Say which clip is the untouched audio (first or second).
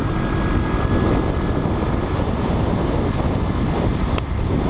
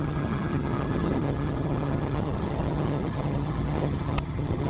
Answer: first